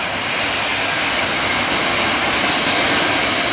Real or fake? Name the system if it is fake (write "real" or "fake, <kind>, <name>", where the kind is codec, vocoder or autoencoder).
real